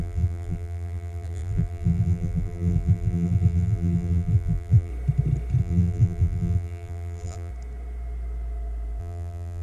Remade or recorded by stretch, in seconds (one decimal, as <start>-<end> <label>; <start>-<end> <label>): 0.0-4.9 remade; 4.9-5.6 recorded; 5.6-7.5 remade; 7.5-9.0 recorded; 9.0-9.6 remade